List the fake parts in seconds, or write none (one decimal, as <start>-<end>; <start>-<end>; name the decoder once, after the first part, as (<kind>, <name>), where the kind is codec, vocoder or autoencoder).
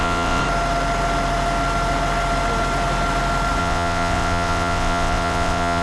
0.0-0.4 (vocoder, WaveNeXt); 3.6-5.8